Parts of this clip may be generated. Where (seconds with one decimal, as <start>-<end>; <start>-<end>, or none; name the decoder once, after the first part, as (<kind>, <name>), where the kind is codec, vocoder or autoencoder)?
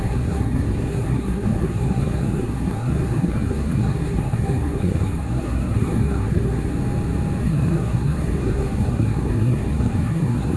0.0-6.7 (codec, SNAC); 7.4-10.6